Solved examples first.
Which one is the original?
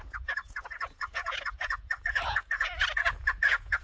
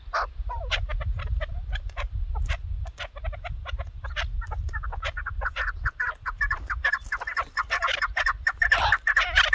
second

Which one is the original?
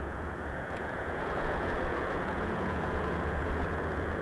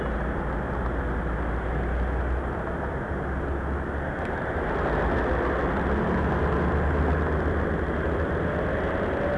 second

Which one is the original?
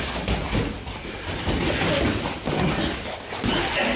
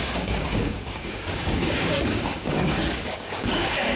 first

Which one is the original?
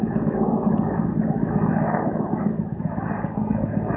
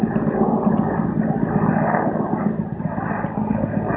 second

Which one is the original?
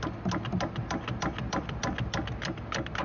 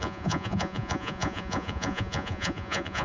first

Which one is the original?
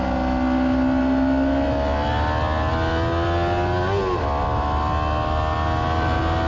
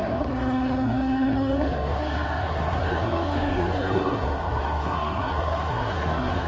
first